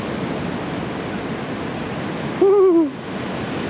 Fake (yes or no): no